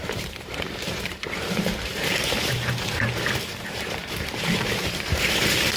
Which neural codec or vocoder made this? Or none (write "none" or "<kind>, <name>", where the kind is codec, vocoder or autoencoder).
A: vocoder, BigVGAN v2